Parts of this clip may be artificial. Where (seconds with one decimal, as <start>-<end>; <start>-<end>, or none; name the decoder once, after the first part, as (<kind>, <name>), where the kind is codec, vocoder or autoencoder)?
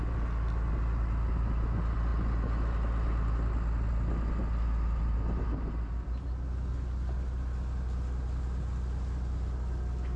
none